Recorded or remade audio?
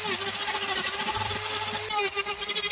recorded